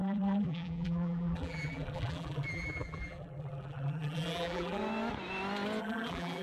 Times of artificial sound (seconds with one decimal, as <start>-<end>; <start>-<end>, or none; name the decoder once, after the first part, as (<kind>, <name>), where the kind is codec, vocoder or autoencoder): 0.0-4.8 (vocoder, BigVGAN v2); 5.8-6.4